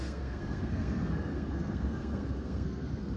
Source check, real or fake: fake